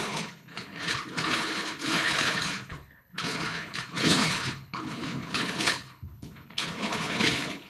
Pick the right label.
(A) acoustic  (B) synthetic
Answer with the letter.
B